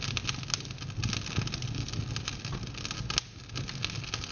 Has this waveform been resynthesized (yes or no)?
no